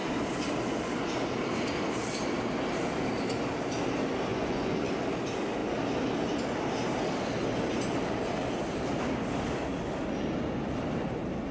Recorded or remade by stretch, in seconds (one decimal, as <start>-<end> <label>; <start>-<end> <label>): 0.0-4.3 recorded; 4.3-4.9 remade; 4.9-11.5 recorded